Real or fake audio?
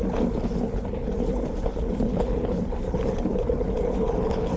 fake